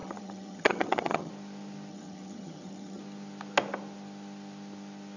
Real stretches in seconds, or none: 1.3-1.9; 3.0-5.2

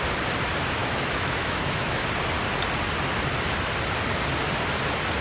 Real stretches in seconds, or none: 0.0-0.8; 2.1-5.2

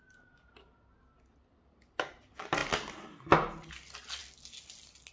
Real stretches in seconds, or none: 0.0-5.1

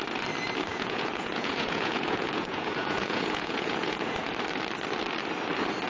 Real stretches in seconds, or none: 0.0-0.7; 4.2-5.9